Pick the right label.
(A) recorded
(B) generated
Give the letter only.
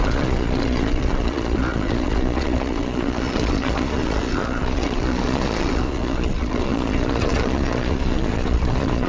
B